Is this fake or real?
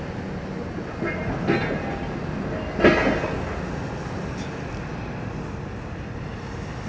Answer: real